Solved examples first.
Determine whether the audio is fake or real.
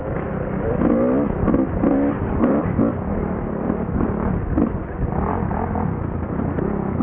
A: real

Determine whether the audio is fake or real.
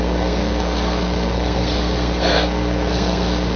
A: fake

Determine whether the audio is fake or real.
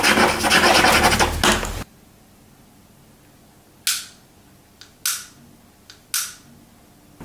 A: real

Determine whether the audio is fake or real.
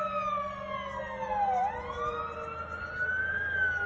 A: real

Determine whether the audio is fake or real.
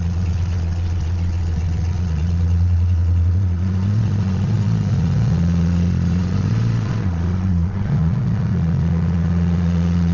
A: fake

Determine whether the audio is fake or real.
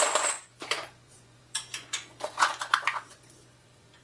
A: fake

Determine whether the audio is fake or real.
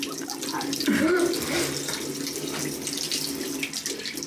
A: fake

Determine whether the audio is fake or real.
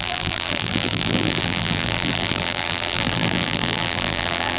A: fake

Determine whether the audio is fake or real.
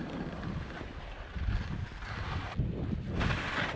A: real